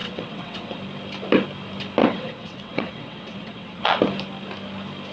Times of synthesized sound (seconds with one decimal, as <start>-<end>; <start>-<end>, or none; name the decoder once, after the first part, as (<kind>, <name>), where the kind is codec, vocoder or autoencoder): 0.0-0.8 (vocoder, WaveNeXt); 2.0-4.0